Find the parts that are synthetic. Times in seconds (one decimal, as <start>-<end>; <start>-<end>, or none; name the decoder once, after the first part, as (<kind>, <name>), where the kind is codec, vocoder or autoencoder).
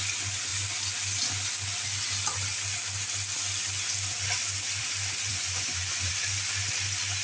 5.3-6.1 (vocoder, Vocos)